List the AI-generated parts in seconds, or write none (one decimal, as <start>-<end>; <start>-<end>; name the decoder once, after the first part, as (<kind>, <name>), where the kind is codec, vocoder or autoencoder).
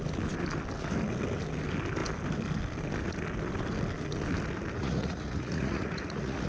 4.8-6.5 (vocoder, Vocos)